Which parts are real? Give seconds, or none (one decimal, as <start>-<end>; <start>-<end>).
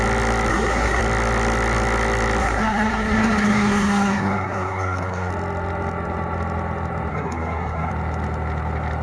0.0-0.5; 1.0-2.4; 5.3-7.1; 7.9-9.0